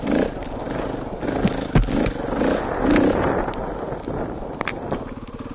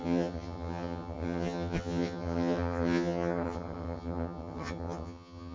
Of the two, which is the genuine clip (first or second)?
first